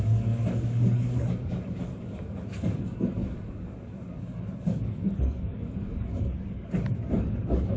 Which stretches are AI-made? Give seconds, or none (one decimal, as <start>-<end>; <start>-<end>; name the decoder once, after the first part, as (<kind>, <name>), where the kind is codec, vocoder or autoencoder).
0.0-7.8 (codec, DAC)